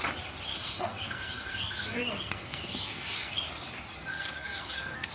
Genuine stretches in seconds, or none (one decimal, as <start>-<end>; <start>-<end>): 0.0-0.5; 3.5-4.1